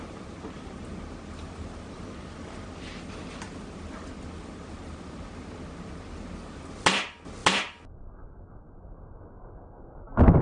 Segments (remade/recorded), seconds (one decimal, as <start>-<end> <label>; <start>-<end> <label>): 0.0-10.4 recorded